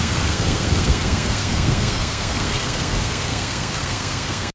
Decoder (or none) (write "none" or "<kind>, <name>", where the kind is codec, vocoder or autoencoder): codec, SNAC